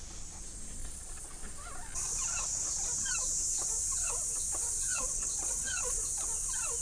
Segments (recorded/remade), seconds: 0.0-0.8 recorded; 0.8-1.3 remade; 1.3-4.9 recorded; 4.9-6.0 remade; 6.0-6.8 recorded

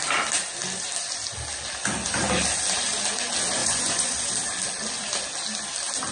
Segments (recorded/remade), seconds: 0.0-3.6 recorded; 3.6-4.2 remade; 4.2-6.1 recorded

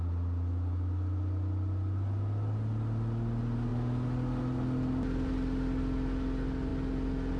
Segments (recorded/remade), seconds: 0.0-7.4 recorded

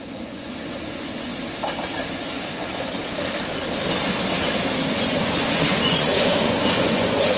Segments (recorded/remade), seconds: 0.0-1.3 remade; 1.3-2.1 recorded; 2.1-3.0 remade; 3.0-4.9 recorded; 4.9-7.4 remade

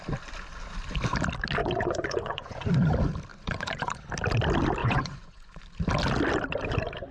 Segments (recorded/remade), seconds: 0.0-1.6 recorded; 1.6-2.7 remade; 2.7-3.3 recorded; 3.3-4.1 remade; 4.1-4.8 recorded; 4.8-5.6 remade; 5.6-7.1 recorded

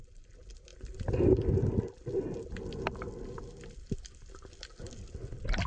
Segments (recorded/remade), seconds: 0.0-5.7 recorded